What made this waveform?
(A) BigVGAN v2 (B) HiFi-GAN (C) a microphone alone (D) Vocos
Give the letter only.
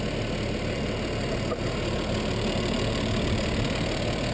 C